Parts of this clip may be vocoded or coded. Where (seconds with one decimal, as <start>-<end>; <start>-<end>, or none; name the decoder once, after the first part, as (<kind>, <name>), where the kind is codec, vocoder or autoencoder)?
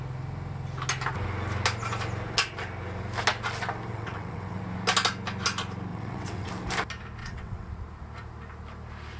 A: 3.9-4.6 (vocoder, WaveNeXt); 5.9-6.5; 7.2-7.7